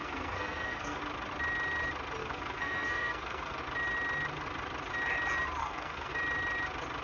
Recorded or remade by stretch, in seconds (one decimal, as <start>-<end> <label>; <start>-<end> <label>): 0.0-1.0 remade; 1.0-2.2 recorded; 2.2-3.6 remade; 3.6-5.6 recorded; 5.6-6.1 remade; 6.1-7.0 recorded